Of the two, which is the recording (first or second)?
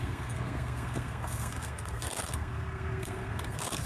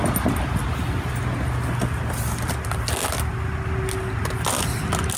second